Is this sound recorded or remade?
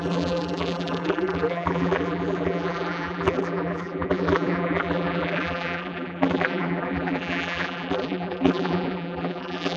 remade